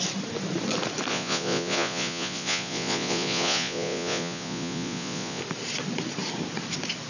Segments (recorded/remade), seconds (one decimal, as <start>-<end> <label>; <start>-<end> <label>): 0.0-1.1 recorded; 1.1-5.4 remade; 5.4-7.1 recorded